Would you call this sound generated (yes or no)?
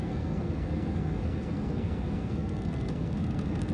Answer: yes